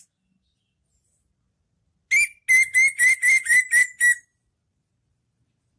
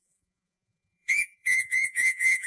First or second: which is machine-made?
second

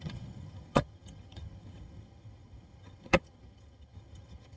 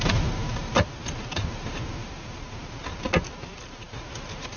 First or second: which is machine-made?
first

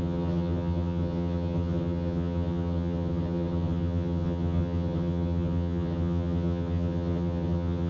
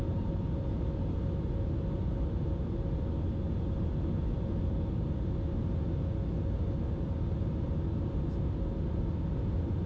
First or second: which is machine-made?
first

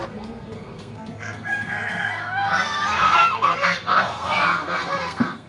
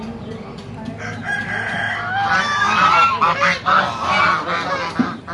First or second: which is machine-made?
first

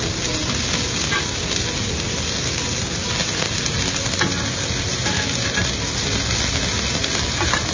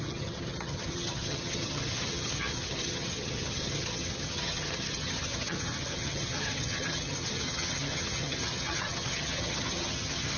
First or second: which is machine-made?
second